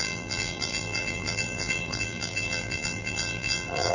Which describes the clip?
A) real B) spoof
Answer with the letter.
B